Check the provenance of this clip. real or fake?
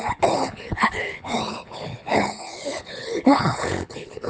fake